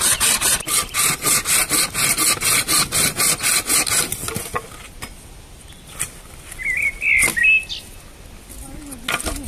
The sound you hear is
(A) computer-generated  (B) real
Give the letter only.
B